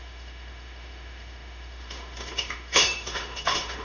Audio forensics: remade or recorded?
remade